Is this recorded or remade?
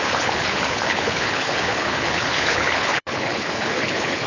remade